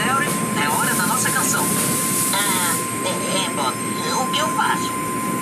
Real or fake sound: real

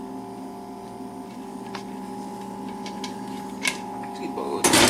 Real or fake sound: real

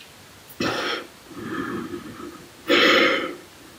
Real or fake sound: real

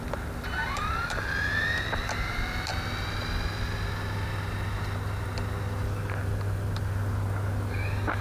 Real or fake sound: real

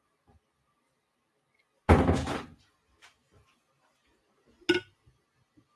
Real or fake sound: real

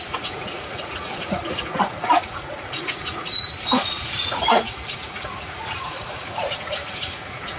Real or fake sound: fake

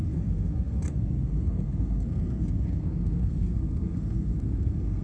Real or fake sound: fake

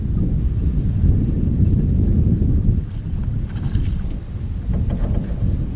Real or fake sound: real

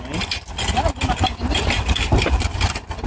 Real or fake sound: real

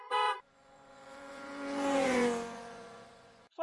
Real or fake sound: fake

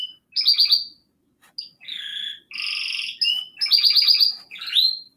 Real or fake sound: real